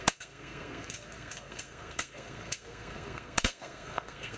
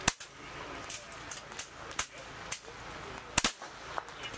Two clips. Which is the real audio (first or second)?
second